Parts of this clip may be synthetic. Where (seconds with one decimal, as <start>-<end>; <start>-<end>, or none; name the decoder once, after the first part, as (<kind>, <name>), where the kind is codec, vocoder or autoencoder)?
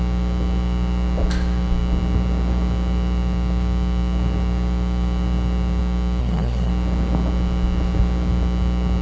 6.2-6.7 (codec, SNAC)